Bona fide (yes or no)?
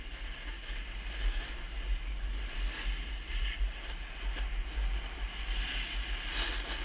yes